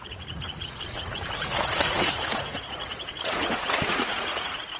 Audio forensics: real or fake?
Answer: fake